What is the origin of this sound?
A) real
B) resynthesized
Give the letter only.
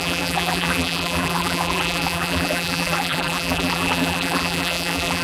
B